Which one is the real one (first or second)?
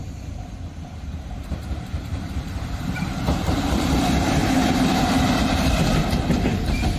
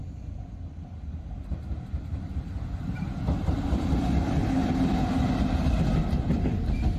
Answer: second